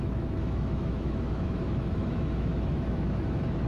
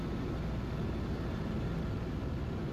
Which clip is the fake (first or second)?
first